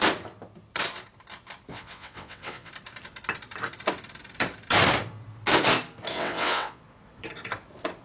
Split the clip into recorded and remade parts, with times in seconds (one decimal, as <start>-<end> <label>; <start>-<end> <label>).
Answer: 0.0-1.7 recorded; 1.7-2.7 remade; 2.7-6.1 recorded; 6.1-6.8 remade; 6.8-8.0 recorded